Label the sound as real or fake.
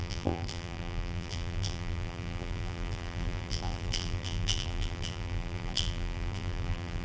fake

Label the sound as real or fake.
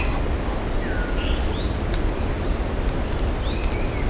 real